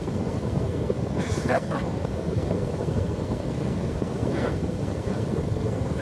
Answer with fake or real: fake